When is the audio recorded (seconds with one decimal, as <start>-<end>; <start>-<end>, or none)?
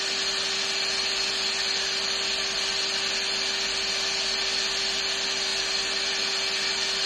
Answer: 0.0-7.1